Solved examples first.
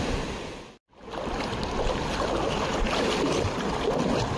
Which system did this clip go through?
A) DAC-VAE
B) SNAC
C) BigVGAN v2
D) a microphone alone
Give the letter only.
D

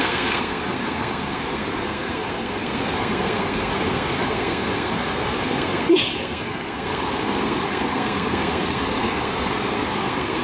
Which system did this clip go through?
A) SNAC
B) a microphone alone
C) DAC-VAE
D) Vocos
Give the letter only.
A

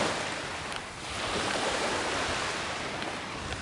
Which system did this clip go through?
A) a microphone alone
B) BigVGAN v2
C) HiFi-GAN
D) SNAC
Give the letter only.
A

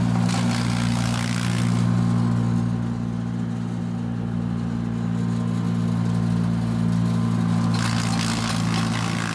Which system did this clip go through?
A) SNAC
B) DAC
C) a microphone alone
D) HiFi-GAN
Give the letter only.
C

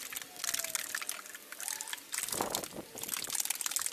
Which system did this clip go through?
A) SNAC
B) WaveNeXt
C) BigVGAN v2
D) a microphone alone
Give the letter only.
D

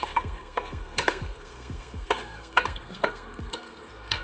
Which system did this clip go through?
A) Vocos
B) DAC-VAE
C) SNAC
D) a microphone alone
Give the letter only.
C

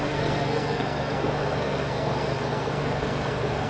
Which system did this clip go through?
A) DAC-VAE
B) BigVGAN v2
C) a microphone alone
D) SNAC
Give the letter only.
D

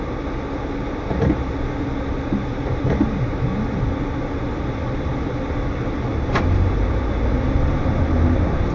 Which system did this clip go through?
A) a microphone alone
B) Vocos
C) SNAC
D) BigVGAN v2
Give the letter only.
A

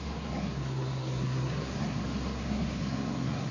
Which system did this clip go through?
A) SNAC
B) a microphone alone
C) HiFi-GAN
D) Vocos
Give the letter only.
A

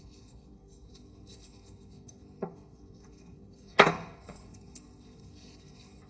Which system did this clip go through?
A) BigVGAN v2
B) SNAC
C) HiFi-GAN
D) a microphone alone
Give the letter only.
B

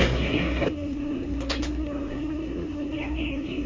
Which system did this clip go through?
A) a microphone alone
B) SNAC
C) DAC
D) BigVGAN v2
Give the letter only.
B